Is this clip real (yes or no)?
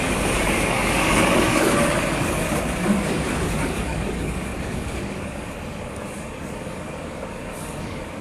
no